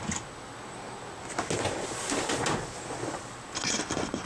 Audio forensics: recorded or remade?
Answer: recorded